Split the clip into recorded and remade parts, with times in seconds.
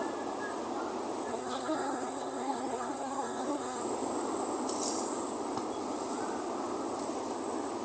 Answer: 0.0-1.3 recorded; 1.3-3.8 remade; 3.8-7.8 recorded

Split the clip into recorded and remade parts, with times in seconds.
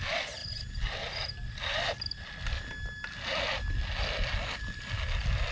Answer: 0.0-5.5 recorded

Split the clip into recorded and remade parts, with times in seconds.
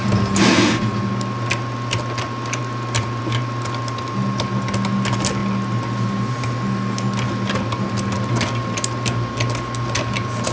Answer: 0.0-10.5 recorded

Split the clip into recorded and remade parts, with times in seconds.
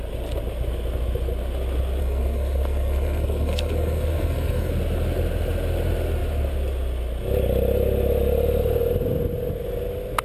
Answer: 0.0-2.0 recorded; 2.0-4.7 remade; 4.7-10.2 recorded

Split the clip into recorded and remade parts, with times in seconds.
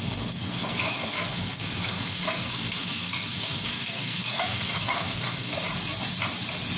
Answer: 0.0-5.5 remade; 5.5-6.8 recorded